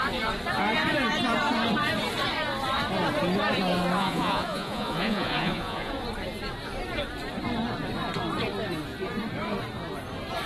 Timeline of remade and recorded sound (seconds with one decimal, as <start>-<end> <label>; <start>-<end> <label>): 0.0-4.0 recorded; 4.0-5.9 remade; 5.9-10.5 recorded